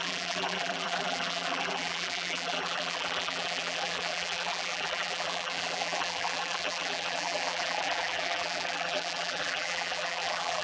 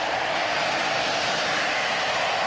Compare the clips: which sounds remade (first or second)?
first